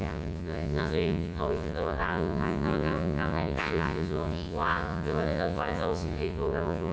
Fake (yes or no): yes